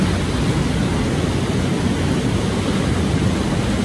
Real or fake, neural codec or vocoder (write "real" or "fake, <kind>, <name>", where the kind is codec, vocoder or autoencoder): real